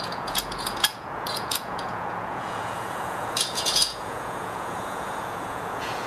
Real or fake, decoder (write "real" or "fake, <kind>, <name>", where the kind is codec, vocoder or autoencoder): fake, vocoder, Vocos